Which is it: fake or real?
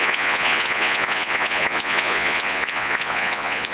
fake